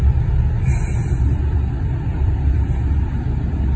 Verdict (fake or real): real